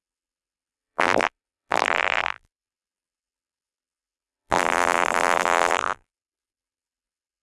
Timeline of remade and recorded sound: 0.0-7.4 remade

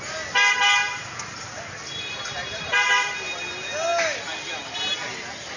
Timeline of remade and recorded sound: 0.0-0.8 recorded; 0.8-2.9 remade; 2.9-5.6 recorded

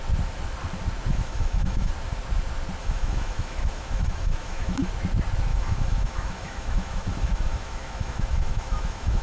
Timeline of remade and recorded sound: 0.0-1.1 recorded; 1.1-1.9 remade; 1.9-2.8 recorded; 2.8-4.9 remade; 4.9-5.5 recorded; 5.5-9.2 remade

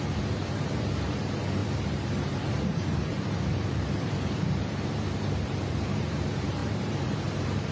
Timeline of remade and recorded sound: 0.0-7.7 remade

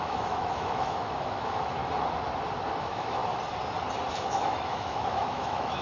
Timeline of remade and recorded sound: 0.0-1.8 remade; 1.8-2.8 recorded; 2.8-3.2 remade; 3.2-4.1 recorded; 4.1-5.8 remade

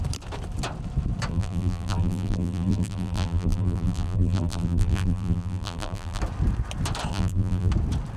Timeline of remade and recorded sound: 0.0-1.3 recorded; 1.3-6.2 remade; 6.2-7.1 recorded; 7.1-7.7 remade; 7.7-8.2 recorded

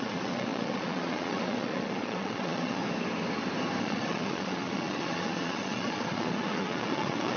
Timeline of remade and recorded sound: 0.0-2.8 remade; 2.8-3.8 recorded; 3.8-7.4 remade

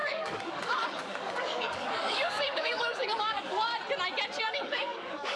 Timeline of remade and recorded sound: 0.0-3.7 remade; 3.7-4.4 recorded; 4.4-5.4 remade